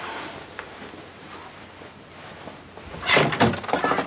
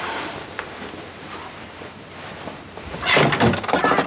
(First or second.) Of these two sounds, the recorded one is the first